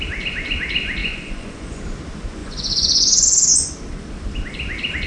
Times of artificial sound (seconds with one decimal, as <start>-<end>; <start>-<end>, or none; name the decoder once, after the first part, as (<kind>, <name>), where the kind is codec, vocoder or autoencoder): 1.0-1.8 (vocoder, Vocos); 2.4-3.7